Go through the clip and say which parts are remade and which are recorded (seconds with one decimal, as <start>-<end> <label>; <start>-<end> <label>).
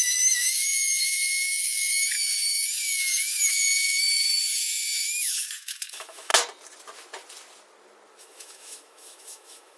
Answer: 0.0-6.3 remade; 6.3-8.2 recorded; 8.2-9.8 remade